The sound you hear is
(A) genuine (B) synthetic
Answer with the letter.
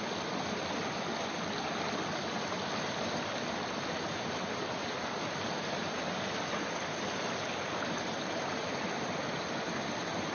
A